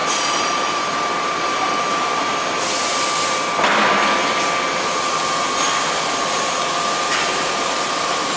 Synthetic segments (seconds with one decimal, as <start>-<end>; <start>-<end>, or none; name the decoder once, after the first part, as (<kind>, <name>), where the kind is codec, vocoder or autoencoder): 0.0-2.3 (vocoder, BigVGAN v2); 6.7-8.4